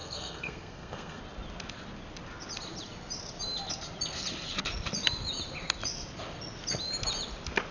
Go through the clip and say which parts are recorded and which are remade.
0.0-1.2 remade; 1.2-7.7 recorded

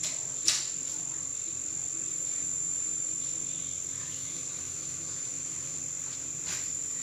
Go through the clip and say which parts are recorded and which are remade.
0.0-4.0 recorded; 4.0-5.8 remade; 5.8-7.0 recorded

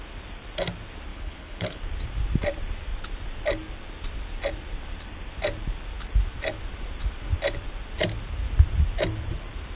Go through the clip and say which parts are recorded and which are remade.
0.0-1.1 recorded; 1.1-1.8 remade; 1.8-9.8 recorded